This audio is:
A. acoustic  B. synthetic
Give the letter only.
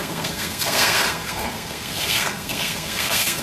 B